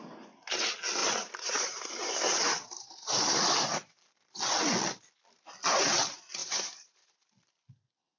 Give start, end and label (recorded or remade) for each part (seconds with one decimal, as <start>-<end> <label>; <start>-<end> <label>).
0.0-1.0 recorded; 1.0-4.1 remade; 4.1-6.4 recorded; 6.4-7.2 remade; 7.2-8.2 recorded